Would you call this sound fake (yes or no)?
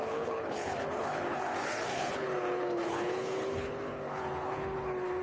yes